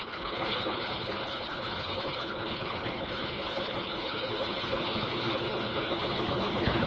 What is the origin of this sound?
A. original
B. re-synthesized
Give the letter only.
B